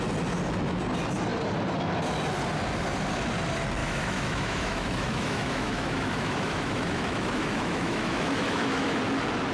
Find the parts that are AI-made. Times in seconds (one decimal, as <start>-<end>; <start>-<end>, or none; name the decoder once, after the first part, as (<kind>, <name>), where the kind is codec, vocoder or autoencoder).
3.8-9.0 (autoencoder, DAC-VAE)

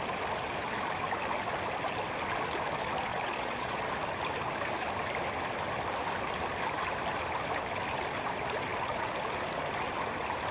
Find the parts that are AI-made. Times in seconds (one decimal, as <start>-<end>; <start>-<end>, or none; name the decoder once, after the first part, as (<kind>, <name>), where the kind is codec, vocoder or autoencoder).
3.1-3.8 (vocoder, Vocos)

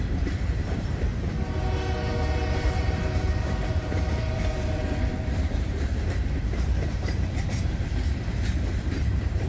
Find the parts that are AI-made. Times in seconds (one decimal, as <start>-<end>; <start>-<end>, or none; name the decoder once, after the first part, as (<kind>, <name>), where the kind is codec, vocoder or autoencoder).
0.0-1.1 (vocoder, BigVGAN v2); 2.3-9.5